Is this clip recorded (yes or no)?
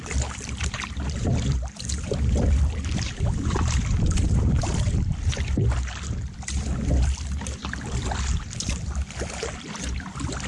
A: no